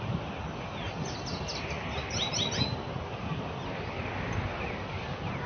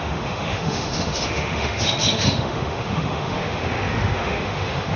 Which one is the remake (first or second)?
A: second